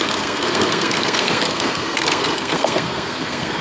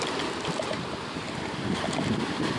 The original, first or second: second